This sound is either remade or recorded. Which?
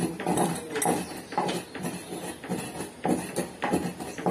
recorded